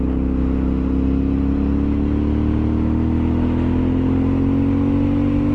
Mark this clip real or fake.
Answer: real